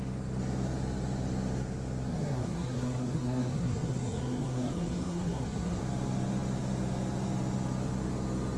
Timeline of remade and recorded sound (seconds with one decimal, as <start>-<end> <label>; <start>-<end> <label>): 0.0-2.1 recorded; 2.1-5.8 remade; 5.8-8.6 recorded